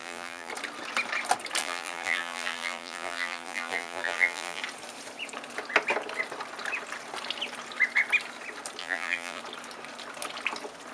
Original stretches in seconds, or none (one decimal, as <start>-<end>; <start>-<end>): 0.5-1.6; 4.6-8.8; 9.4-10.9